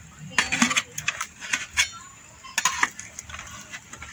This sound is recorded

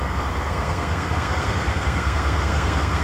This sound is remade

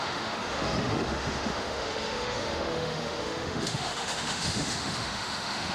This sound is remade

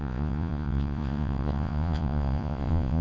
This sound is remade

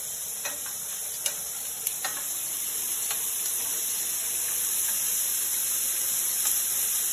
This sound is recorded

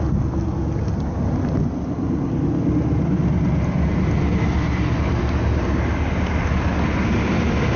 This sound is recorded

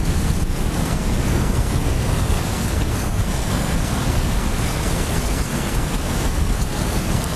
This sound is remade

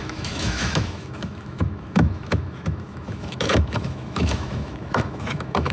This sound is remade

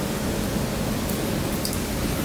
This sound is recorded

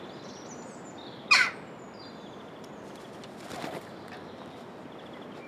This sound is recorded